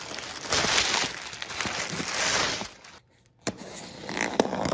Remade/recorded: recorded